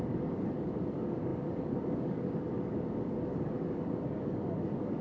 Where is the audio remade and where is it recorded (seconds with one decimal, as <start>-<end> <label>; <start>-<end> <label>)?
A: 0.0-5.0 remade